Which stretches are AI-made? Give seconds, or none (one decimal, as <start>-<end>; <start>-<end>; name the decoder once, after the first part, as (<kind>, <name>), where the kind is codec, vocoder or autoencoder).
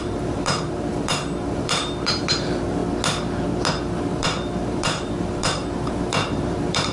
0.0-2.8 (vocoder, BigVGAN v2); 3.7-6.9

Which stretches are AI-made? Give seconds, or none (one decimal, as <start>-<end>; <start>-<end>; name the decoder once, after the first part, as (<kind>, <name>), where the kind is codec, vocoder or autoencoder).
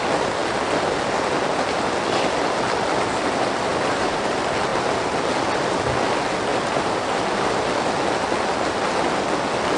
3.7-4.3 (vocoder, BigVGAN v2); 6.5-7.2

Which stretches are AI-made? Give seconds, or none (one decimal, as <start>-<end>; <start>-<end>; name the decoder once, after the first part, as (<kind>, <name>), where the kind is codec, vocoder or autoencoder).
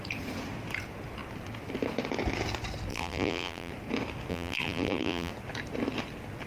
2.9-3.7 (vocoder, BigVGAN v2); 4.3-5.3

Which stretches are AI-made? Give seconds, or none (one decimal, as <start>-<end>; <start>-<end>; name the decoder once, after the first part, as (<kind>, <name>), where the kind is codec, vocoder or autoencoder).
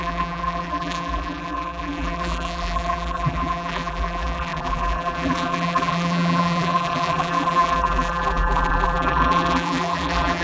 0.0-10.4 (vocoder, BigVGAN v2)